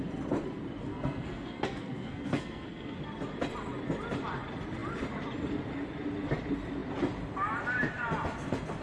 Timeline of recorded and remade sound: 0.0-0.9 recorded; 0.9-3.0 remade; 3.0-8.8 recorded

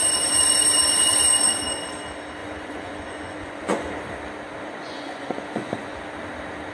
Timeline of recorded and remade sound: 0.0-2.4 recorded; 2.4-3.9 remade; 3.9-4.7 recorded; 4.7-6.0 remade; 6.0-6.7 recorded

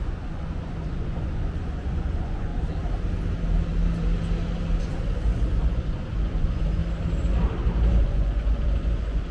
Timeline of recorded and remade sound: 0.0-2.5 remade; 2.5-4.8 recorded; 4.8-6.8 remade; 6.8-8.0 recorded; 8.0-9.3 remade

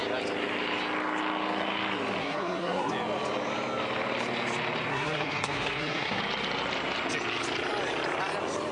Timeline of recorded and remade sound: 0.0-2.2 recorded; 2.2-2.9 remade; 2.9-4.9 recorded; 4.9-6.2 remade; 6.2-8.7 recorded

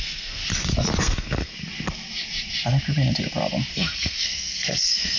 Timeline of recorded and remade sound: 0.0-0.4 remade; 0.4-1.0 recorded; 1.0-1.5 remade; 1.5-3.7 recorded; 3.7-5.2 remade

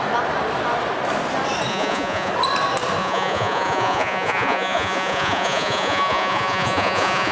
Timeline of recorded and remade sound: 0.0-1.7 recorded; 1.7-2.3 remade; 2.3-3.0 recorded; 3.0-7.3 remade